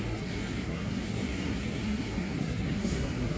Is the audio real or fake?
fake